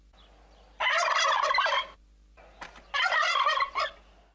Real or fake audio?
real